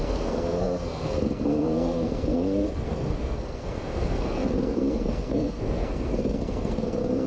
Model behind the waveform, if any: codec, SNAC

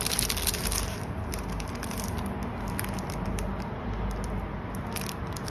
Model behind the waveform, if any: none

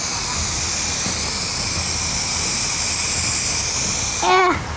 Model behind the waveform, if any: none